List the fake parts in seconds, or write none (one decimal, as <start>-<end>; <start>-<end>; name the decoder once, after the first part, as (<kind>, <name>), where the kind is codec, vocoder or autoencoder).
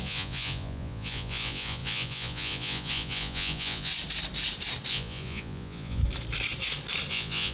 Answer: 0.0-3.9 (vocoder, Vocos); 4.9-6.0; 7.1-7.5